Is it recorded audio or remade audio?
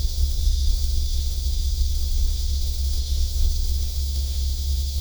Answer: remade